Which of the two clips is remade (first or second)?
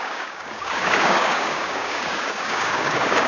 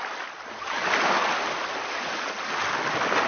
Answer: first